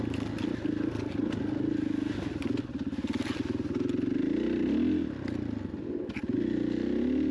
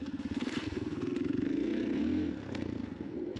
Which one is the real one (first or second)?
first